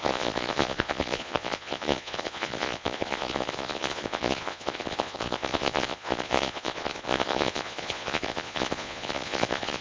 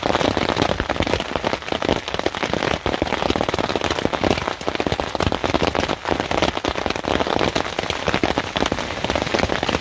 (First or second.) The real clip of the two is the second